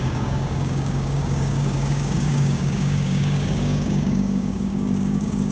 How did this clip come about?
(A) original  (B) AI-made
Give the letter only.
B